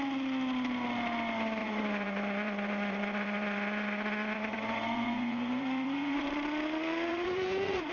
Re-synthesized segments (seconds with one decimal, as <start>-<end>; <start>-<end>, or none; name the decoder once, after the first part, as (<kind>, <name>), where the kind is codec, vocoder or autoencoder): 1.6-6.3 (vocoder, Vocos); 7.1-7.9